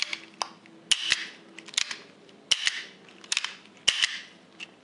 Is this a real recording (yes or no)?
yes